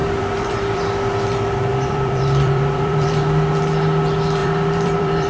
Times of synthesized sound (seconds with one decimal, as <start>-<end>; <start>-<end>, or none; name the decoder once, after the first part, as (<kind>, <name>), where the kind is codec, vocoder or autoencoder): 0.0-0.8 (vocoder, BigVGAN v2); 1.7-3.5; 4.4-5.3